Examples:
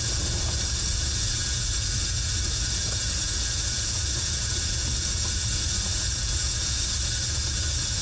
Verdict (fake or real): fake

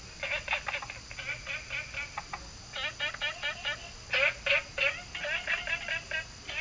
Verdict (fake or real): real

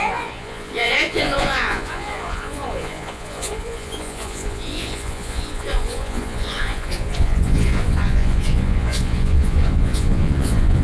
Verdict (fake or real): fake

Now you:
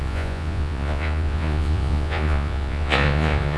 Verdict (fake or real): fake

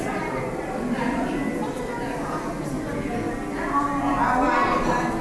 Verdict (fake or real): real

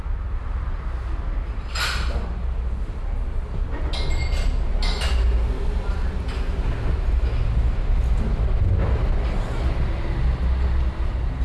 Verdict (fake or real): real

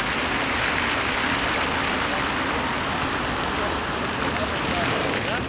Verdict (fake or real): real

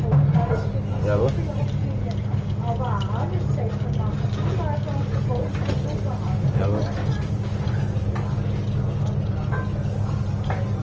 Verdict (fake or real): real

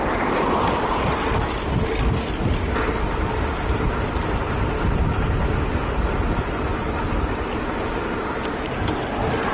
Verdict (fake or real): real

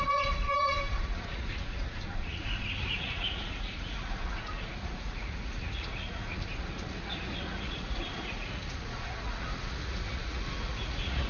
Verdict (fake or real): fake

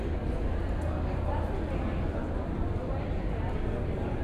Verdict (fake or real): real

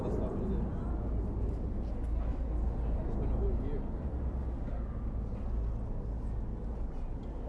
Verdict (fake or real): real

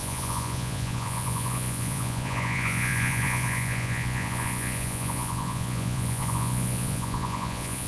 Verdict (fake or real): fake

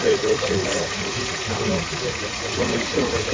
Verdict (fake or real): fake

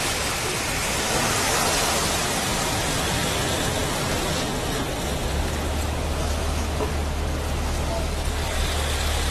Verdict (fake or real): real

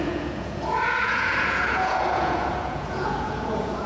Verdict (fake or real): fake